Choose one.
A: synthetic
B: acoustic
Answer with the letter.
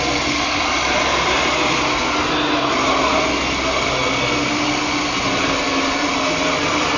B